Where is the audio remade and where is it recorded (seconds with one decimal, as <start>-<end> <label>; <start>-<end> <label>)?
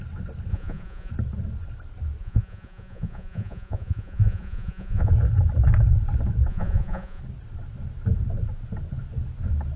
0.0-0.5 recorded; 0.5-1.1 remade; 1.1-2.2 recorded; 2.2-5.1 remade; 5.1-6.5 recorded; 6.5-7.2 remade; 7.2-9.8 recorded